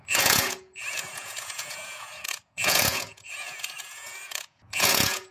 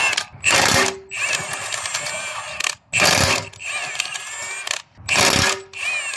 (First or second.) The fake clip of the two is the first